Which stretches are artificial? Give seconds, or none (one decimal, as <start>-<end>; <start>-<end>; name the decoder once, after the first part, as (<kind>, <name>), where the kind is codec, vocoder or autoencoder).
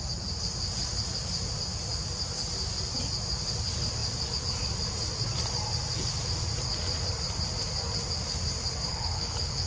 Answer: 8.9-9.7 (codec, HILCodec)